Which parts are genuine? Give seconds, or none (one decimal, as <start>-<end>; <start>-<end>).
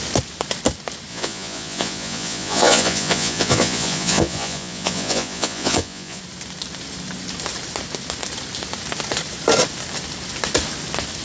0.0-1.1; 6.2-11.2